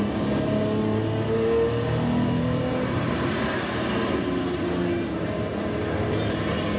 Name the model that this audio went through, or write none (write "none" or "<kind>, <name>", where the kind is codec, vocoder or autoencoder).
none